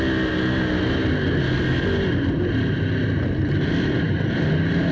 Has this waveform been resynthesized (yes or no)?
no